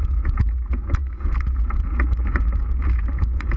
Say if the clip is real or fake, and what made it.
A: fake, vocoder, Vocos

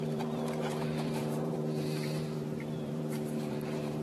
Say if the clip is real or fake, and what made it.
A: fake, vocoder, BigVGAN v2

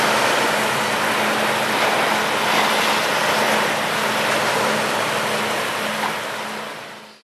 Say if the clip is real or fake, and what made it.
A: real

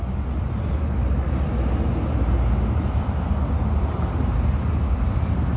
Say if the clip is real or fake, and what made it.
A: real